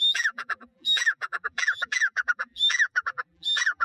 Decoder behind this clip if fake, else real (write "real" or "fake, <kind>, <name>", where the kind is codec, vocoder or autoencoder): fake, vocoder, BigVGAN v2